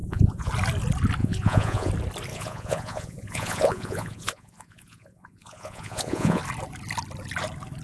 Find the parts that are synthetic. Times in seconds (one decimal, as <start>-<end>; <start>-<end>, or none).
0.0-0.5; 1.2-1.9; 2.3-6.4